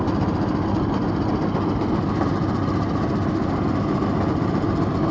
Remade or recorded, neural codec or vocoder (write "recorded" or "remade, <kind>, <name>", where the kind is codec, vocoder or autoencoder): recorded